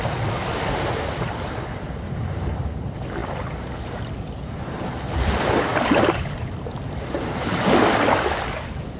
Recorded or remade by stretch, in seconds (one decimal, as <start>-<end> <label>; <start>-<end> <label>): 0.0-5.7 recorded; 5.7-6.5 remade; 6.5-9.0 recorded